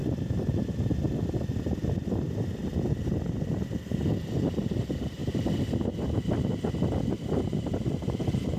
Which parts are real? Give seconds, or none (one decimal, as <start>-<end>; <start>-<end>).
0.0-8.6